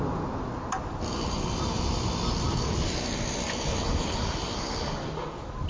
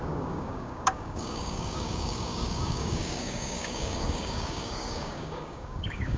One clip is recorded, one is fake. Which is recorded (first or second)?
first